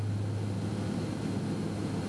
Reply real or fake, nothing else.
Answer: real